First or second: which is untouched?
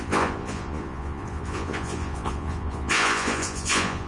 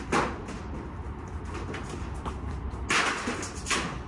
second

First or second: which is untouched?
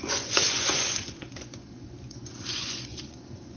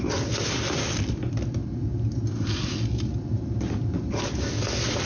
second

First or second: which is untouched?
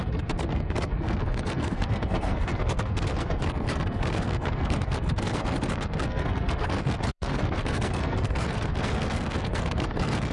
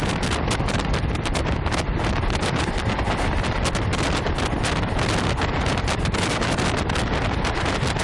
second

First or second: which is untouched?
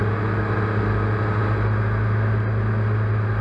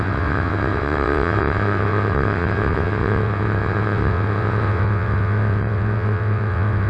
first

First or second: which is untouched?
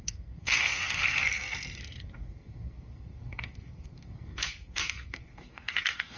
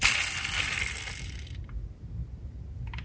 second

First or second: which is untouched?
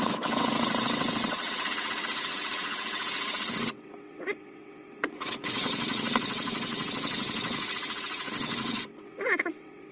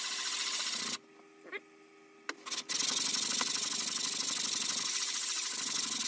second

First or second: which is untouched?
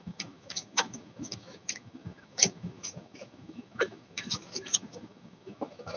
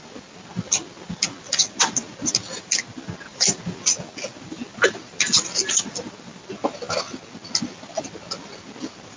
second